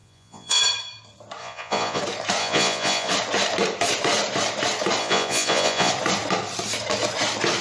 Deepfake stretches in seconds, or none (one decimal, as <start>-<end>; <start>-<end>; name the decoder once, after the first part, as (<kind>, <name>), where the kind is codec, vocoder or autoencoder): 0.0-0.6 (vocoder, Vocos); 1.4-2.0; 2.4-3.1; 5.0-5.9